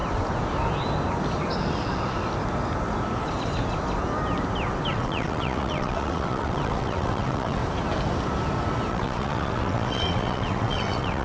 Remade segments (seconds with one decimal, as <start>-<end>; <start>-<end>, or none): 4.9-7.6; 8.9-11.2